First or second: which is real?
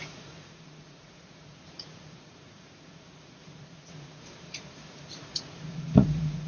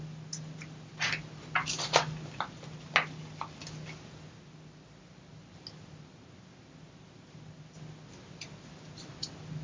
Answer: second